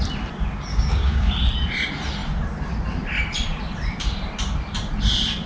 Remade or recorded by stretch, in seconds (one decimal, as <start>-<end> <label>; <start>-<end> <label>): 0.0-0.7 recorded; 0.7-1.3 remade; 1.3-5.5 recorded